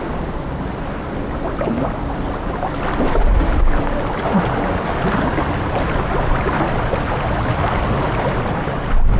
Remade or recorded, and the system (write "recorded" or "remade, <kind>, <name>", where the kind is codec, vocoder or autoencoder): recorded